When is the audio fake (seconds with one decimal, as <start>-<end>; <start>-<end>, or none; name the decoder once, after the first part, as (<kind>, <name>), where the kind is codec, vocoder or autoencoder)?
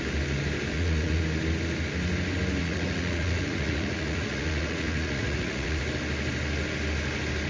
0.7-1.2 (vocoder, Vocos); 2.6-5.8